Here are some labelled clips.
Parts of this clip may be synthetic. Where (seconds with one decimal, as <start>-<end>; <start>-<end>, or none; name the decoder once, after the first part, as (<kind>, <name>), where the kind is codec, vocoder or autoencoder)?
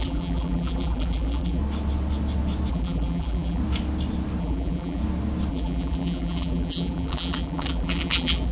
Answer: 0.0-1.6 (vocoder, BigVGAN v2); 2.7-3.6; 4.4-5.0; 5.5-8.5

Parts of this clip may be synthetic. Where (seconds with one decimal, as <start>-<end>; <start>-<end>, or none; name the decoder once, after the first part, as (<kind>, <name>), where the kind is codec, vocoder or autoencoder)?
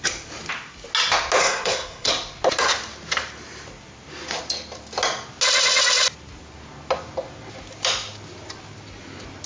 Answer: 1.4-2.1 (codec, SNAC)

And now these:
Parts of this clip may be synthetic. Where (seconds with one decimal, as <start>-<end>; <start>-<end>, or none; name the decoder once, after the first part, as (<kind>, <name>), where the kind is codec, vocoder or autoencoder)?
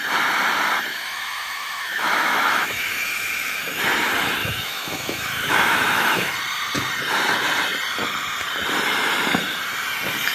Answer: 0.9-3.8 (autoencoder, DAC-VAE); 4.4-6.3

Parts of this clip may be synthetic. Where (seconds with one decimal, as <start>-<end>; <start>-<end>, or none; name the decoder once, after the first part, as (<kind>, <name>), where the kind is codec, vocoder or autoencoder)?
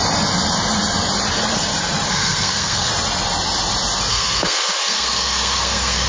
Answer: 2.1-2.9 (codec, SNAC); 4.1-6.1